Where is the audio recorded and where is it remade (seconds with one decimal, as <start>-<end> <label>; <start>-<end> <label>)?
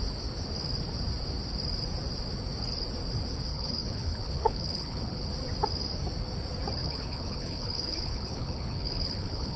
0.0-3.5 recorded; 3.5-5.3 remade; 5.3-6.8 recorded; 6.8-9.6 remade